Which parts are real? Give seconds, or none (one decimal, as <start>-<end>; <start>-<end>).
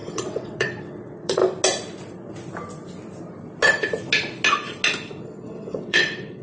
1.4-5.2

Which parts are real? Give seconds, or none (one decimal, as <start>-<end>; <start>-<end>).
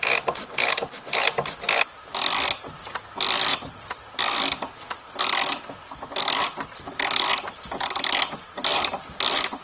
0.0-9.6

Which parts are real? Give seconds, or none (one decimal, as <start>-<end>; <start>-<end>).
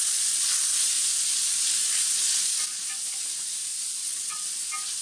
0.0-4.0; 4.5-5.0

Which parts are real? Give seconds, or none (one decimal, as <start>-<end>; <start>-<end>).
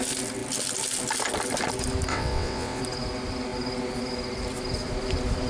0.0-2.1; 2.8-5.5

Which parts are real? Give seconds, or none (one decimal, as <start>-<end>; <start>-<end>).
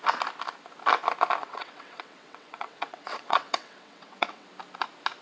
0.0-1.4; 4.5-5.2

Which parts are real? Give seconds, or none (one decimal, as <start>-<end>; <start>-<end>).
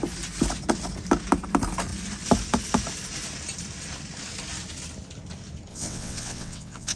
0.0-5.7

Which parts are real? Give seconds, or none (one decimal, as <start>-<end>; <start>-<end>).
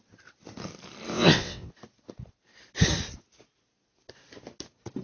0.0-1.1; 1.7-5.0